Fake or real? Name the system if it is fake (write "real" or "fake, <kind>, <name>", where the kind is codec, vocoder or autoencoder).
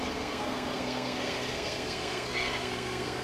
fake, codec, SNAC